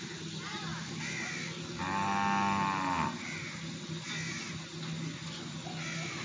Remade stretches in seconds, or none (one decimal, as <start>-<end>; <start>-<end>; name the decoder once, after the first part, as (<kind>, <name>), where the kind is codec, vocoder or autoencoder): none